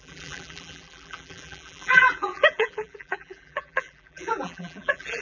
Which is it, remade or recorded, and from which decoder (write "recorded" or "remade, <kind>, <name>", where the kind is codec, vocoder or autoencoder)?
remade, vocoder, BigVGAN v2